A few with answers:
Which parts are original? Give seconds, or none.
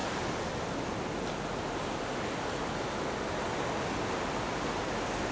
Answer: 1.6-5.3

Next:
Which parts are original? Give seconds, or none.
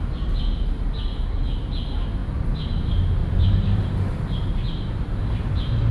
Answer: 0.0-3.2; 4.8-5.9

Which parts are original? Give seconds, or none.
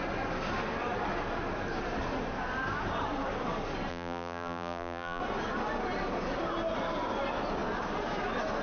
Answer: 0.0-3.9; 5.2-8.6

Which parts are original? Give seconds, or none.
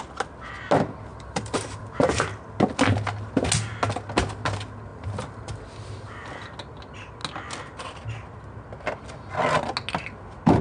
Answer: 0.0-1.1; 1.8-4.9; 5.9-10.6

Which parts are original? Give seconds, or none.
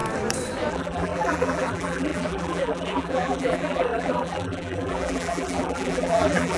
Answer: 0.0-0.7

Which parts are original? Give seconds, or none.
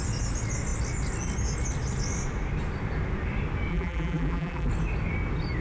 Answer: 0.0-3.7; 4.7-5.6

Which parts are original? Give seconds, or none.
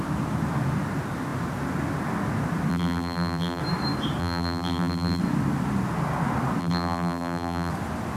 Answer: 0.0-2.7; 3.6-4.2; 5.2-6.6; 7.7-8.2